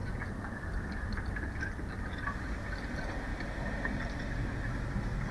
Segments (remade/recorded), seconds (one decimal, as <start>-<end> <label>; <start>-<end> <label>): 0.0-5.3 recorded